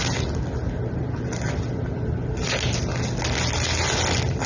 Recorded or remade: recorded